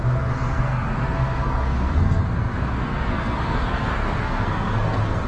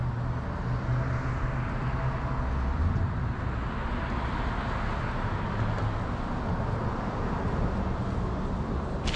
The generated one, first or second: first